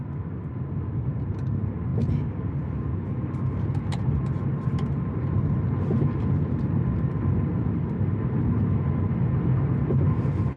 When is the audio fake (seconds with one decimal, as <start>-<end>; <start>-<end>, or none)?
none